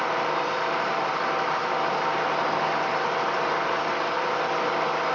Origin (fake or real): fake